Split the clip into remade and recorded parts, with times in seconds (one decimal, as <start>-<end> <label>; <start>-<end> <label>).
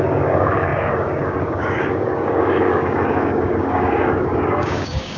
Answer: 0.0-5.2 remade